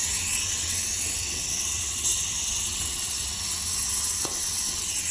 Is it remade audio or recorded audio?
remade